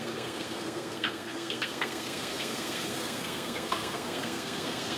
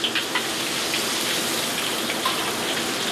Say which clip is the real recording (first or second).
second